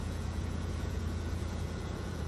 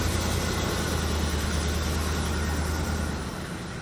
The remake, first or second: first